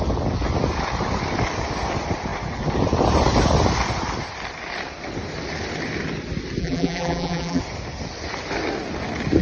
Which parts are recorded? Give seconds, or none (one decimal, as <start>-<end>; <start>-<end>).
0.0-6.6; 7.6-9.4